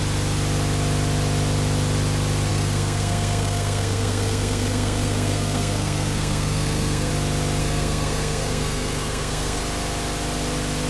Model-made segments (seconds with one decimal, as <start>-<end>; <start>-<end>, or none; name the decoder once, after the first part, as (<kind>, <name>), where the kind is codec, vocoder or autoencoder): 2.5-7.1 (codec, SNAC); 7.6-9.6